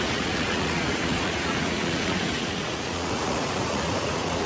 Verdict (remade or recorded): remade